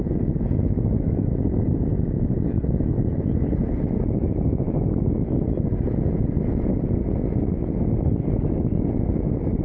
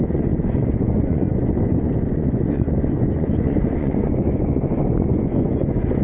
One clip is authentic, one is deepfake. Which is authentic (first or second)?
first